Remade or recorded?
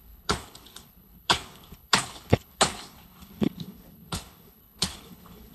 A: remade